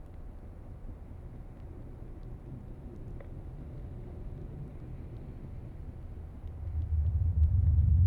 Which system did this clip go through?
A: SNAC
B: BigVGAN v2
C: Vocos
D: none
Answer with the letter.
D